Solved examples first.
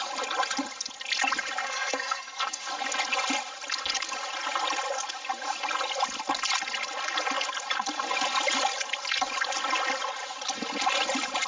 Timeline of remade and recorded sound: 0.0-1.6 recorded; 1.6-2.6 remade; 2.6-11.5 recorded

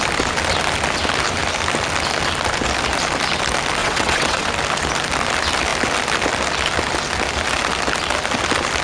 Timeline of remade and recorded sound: 0.0-3.8 recorded; 3.8-4.5 remade; 4.5-8.8 recorded